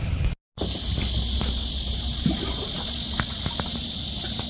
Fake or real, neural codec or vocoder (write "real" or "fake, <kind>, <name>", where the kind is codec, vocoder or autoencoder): real